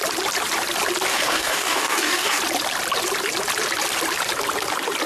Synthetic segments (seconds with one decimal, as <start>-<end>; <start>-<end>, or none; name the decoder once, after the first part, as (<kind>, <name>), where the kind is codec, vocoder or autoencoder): 1.1-2.4 (codec, DAC)